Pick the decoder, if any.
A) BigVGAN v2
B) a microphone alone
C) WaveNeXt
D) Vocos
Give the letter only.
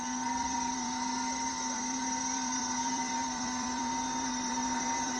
A